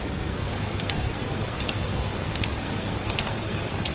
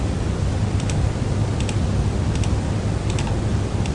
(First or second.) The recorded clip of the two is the second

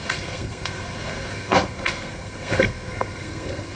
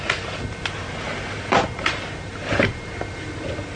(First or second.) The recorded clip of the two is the second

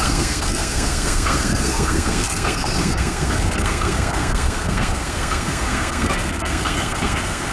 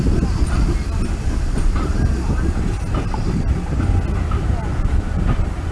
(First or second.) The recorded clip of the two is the second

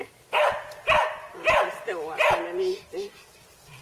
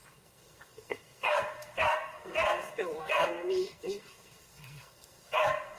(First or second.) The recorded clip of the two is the first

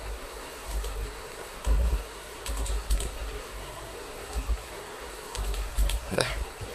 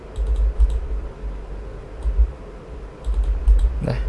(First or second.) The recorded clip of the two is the second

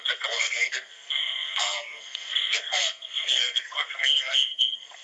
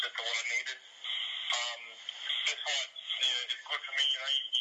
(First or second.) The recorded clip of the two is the second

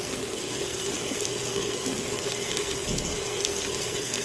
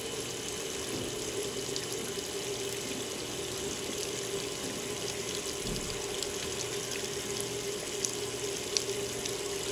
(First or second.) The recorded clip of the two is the second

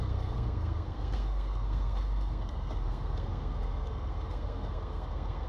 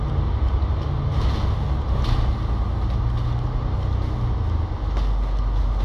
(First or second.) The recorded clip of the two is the second